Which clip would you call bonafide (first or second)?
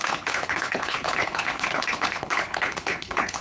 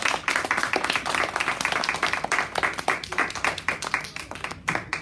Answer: second